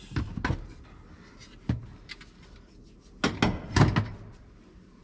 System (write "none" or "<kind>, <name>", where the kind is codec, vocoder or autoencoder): none